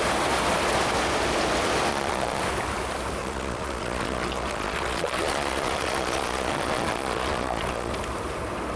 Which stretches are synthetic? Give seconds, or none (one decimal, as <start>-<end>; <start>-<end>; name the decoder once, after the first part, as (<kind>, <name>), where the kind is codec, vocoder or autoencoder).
1.9-2.4 (vocoder, Vocos); 3.2-7.9